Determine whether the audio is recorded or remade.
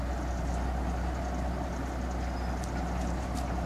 recorded